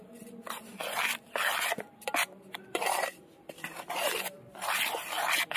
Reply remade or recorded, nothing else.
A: remade